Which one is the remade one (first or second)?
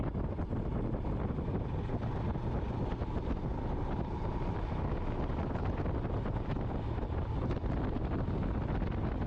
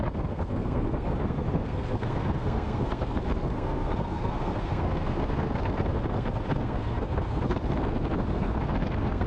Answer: second